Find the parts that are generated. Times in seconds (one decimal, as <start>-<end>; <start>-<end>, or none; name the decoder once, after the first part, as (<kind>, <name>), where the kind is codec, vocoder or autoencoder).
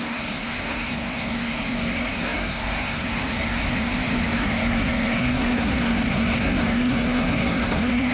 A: 0.0-8.1 (codec, SNAC)